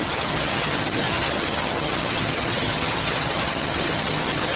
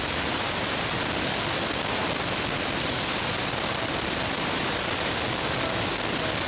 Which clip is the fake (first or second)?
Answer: first